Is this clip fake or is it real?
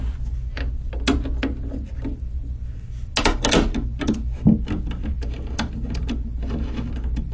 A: real